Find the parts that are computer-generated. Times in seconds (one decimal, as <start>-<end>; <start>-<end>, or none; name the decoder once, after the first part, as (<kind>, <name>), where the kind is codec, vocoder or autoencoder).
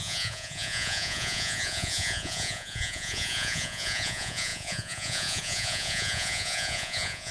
0.0-7.3 (vocoder, Vocos)